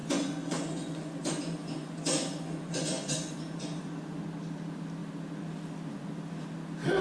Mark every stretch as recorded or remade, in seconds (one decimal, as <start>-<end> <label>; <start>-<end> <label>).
0.0-4.2 remade; 4.2-7.0 recorded

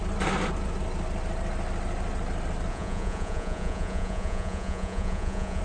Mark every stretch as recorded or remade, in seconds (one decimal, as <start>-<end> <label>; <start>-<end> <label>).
0.0-2.7 recorded; 2.7-5.6 remade

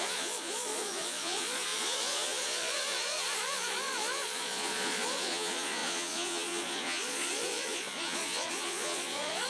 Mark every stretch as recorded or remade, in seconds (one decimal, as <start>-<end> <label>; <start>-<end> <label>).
0.0-9.5 remade